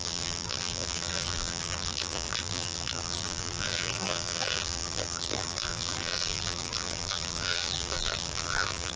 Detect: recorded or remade remade